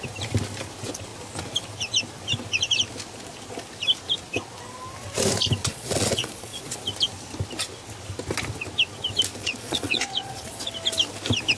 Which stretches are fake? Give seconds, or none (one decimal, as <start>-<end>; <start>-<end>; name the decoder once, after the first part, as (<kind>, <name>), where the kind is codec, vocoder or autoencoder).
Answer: 5.6-6.8 (vocoder, Vocos); 9.4-10.7